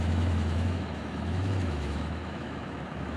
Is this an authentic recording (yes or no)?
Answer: no